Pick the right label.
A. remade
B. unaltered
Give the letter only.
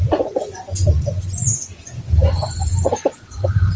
A